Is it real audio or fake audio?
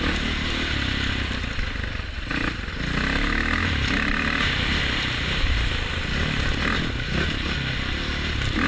real